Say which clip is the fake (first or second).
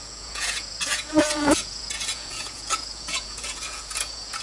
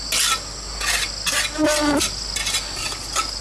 first